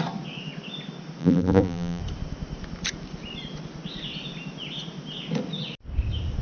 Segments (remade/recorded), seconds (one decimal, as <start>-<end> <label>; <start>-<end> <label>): 0.0-1.2 recorded; 1.2-2.0 remade; 2.0-6.4 recorded